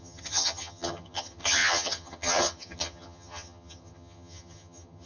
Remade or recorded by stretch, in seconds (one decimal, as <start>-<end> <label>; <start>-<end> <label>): 0.0-5.1 remade